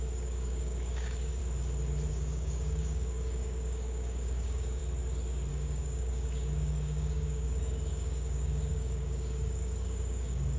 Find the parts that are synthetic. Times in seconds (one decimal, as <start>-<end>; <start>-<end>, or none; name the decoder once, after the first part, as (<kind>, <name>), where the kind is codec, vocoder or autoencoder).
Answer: 0.0-1.4 (codec, DAC); 2.1-4.8; 5.5-10.6